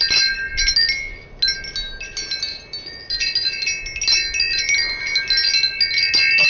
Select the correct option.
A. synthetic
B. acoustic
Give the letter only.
B